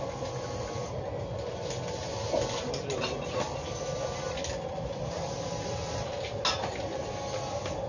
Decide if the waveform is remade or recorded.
recorded